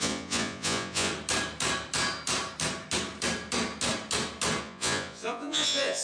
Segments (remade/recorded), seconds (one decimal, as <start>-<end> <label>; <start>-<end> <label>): 0.0-1.1 remade; 1.1-4.6 recorded; 4.6-6.0 remade